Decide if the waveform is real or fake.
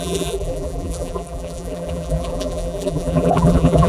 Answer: fake